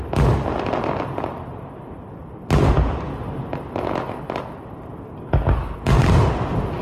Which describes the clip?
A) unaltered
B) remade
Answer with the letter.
A